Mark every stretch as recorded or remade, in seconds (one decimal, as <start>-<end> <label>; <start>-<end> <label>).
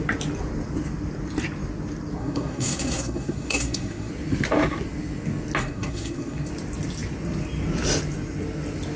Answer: 0.0-2.2 recorded; 2.2-4.1 remade; 4.1-5.6 recorded; 5.6-6.5 remade; 6.5-9.0 recorded